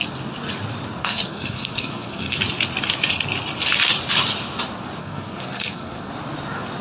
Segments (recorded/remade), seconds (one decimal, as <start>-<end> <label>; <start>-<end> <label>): 0.0-1.0 recorded; 1.0-2.4 remade; 2.4-5.0 recorded; 5.0-6.1 remade; 6.1-6.8 recorded